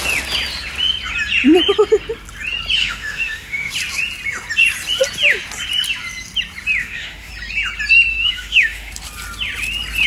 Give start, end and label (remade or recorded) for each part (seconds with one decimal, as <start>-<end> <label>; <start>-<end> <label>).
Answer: 0.0-2.8 recorded; 2.8-3.7 remade; 3.7-6.8 recorded; 6.8-7.3 remade; 7.3-8.1 recorded; 8.1-8.9 remade; 8.9-10.1 recorded